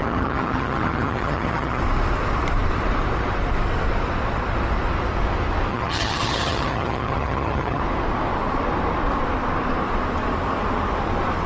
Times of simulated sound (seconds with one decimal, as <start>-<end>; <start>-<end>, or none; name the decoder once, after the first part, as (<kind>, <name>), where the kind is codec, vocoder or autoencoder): 0.0-1.8 (vocoder, HiFi-GAN); 5.7-7.8